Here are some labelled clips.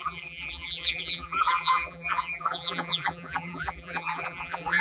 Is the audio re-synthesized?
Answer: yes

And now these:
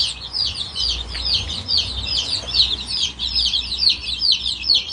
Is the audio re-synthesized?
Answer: yes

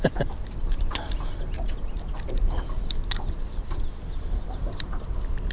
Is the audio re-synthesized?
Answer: no